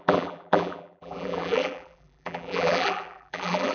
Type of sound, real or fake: fake